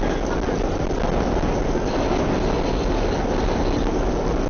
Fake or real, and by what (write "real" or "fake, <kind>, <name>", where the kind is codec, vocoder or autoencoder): real